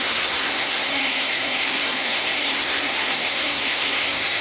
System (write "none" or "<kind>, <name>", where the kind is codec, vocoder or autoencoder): codec, SNAC